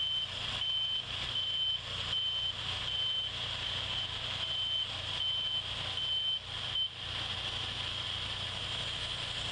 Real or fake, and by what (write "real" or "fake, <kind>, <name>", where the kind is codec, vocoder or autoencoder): real